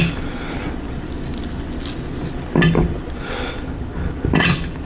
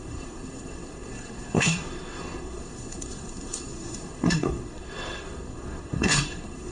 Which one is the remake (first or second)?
second